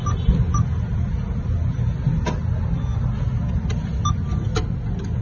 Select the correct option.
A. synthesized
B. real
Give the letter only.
B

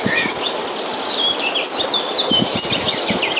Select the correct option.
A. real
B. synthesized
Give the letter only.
A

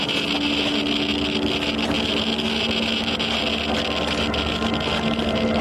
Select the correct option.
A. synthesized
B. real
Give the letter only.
B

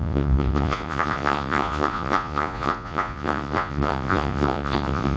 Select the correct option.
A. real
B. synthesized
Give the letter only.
B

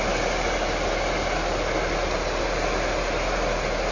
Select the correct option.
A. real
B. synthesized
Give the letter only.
A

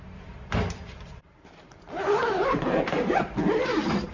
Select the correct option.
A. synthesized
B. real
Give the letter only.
B